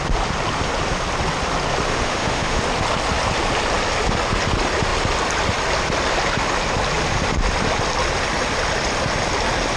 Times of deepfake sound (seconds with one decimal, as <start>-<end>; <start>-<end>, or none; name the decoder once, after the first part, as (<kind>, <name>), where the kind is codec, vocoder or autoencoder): 1.9-2.6 (autoencoder, DAC-VAE)